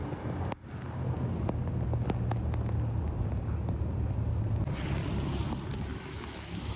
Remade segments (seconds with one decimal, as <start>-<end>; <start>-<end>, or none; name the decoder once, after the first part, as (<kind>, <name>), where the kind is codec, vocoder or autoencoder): 5.9-6.8 (autoencoder, DAC-VAE)